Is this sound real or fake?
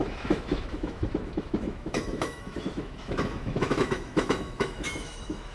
fake